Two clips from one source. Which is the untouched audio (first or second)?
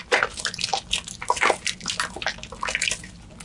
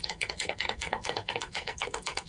first